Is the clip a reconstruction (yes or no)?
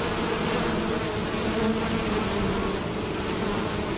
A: no